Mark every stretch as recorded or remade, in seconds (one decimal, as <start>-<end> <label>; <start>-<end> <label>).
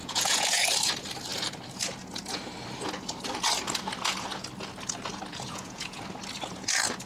0.0-0.7 remade; 0.7-5.3 recorded; 5.3-6.0 remade; 6.0-7.1 recorded